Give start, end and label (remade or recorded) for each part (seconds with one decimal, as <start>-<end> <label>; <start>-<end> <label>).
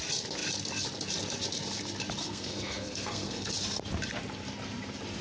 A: 0.0-2.2 recorded; 2.2-3.5 remade; 3.5-5.2 recorded